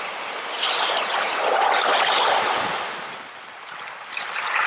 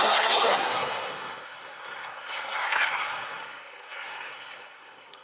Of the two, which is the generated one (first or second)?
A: second